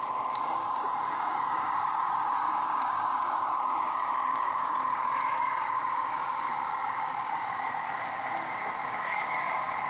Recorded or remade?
remade